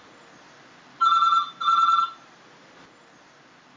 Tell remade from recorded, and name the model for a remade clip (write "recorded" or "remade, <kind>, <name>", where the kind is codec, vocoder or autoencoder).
recorded